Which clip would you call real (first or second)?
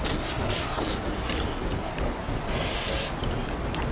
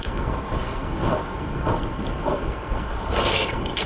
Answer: first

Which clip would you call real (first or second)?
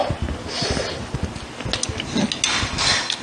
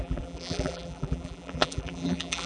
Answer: first